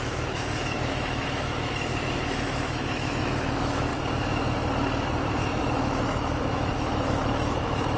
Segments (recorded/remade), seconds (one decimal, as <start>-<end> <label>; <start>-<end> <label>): 0.0-3.9 remade; 3.9-5.6 recorded; 5.6-8.0 remade